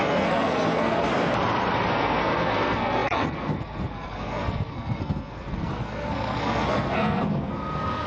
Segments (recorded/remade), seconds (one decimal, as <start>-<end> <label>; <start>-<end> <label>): 0.0-1.1 remade; 1.1-1.9 recorded; 1.9-8.1 remade